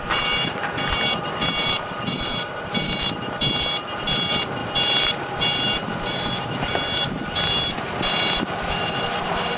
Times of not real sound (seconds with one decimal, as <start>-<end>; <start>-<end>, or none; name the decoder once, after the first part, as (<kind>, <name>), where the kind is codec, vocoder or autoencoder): 0.0-6.7 (vocoder, BigVGAN v2); 7.7-9.6